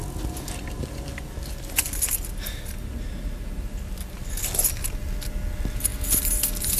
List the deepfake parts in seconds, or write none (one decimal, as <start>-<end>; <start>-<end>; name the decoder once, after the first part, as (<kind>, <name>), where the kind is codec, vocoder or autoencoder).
none